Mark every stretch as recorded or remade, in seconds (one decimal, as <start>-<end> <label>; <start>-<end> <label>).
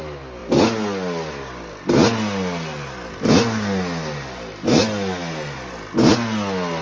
0.0-6.8 recorded